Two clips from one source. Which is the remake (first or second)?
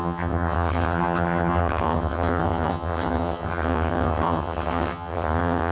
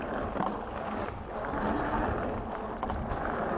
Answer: first